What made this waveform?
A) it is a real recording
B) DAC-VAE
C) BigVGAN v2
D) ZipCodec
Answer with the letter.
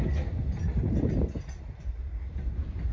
A